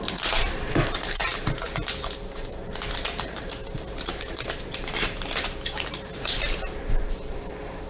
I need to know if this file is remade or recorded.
remade